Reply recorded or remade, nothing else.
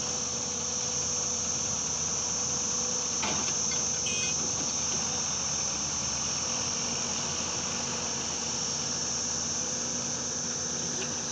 recorded